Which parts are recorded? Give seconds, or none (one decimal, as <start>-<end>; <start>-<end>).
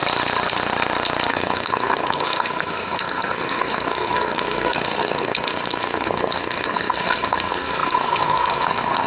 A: 0.0-1.3